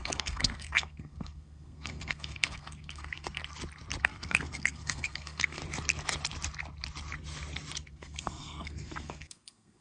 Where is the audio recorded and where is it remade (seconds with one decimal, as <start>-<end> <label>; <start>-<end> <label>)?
0.0-3.4 remade; 3.4-4.0 recorded; 4.0-5.6 remade; 5.6-7.9 recorded; 7.9-9.8 remade